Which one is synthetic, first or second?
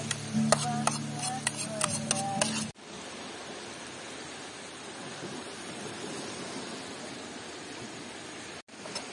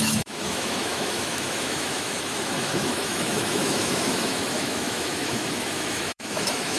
second